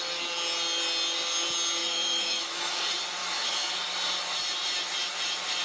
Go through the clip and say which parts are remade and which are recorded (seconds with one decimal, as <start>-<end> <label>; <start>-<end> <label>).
0.0-1.8 recorded; 1.8-2.8 remade; 2.8-3.2 recorded; 3.2-3.7 remade; 3.7-5.6 recorded

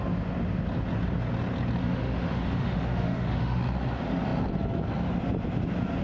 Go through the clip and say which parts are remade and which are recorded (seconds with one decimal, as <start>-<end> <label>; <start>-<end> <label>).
0.0-1.8 recorded; 1.8-3.6 remade; 3.6-6.0 recorded

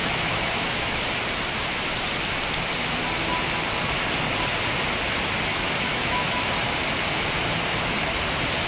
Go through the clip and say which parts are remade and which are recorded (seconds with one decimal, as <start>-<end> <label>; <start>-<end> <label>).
0.0-1.0 remade; 1.0-5.5 recorded; 5.5-6.4 remade; 6.4-8.7 recorded

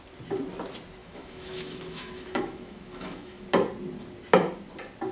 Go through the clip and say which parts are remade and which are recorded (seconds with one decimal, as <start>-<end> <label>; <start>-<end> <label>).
0.0-1.0 recorded; 1.0-3.4 remade; 3.4-5.1 recorded

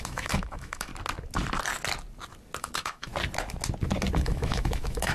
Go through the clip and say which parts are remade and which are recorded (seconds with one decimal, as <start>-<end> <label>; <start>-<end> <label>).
0.0-0.9 remade; 0.9-2.6 recorded; 2.6-3.1 remade; 3.1-4.2 recorded; 4.2-5.1 remade

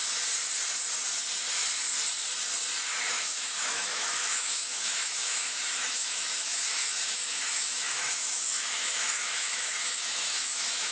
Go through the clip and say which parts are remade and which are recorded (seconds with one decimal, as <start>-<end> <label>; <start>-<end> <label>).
0.0-3.0 recorded; 3.0-10.9 remade